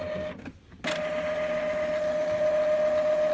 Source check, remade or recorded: recorded